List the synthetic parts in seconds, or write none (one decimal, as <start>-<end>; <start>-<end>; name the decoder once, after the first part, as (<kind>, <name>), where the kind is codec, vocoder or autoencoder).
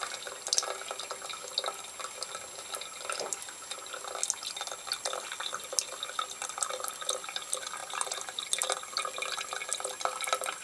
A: 7.8-8.4 (vocoder, BigVGAN v2)